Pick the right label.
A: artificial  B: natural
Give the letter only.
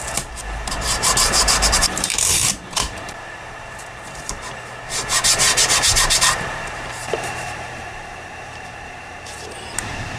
A